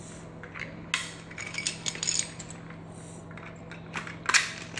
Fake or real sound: real